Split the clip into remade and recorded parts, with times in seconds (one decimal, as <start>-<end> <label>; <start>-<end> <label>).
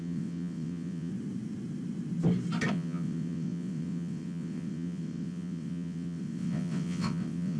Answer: 0.0-1.1 remade; 1.1-2.7 recorded; 2.7-7.6 remade